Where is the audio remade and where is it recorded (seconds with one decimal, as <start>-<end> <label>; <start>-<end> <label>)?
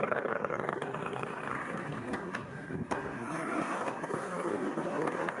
0.0-5.4 remade